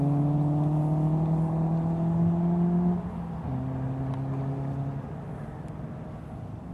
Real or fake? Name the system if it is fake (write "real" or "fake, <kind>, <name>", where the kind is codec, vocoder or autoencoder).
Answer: real